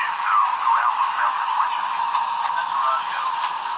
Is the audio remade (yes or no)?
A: yes